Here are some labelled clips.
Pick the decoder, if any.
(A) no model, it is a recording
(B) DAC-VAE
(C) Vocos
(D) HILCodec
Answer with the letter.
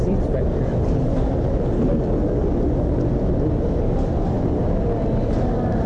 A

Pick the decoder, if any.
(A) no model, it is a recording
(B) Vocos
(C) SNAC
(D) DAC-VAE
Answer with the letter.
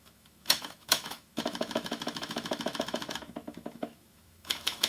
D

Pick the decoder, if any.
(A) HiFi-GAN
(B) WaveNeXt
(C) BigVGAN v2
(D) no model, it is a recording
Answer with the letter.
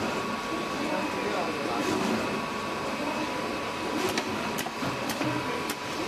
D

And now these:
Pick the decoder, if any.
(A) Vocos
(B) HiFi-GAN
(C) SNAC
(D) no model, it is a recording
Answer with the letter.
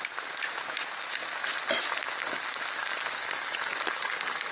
D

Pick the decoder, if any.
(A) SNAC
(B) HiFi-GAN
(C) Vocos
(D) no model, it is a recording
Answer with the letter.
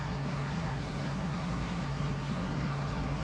A